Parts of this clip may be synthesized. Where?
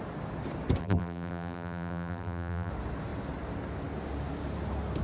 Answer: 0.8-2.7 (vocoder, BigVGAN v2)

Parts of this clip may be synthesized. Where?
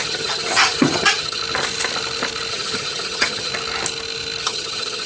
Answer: 0.0-1.4 (vocoder, HiFi-GAN); 2.5-3.5; 4.4-5.1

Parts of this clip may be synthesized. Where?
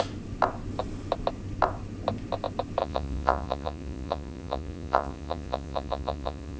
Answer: 2.8-6.6 (vocoder, Vocos)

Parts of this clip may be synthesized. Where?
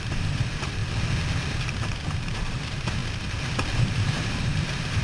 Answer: 0.0-0.8 (vocoder, BigVGAN v2); 2.1-3.0; 3.7-5.0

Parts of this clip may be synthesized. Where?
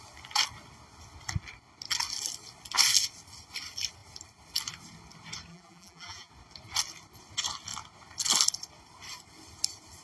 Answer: 5.5-6.3 (vocoder, BigVGAN v2)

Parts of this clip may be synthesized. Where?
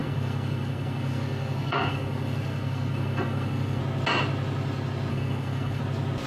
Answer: 0.0-3.8 (codec, SNAC); 5.1-5.8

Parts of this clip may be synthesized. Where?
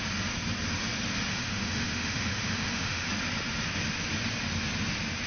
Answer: 1.3-3.1 (autoencoder, DAC-VAE)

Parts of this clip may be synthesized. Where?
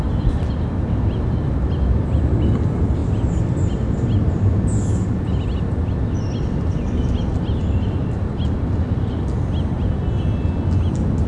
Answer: none